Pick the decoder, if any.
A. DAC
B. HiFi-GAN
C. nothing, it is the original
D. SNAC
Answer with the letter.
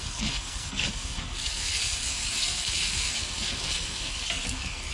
D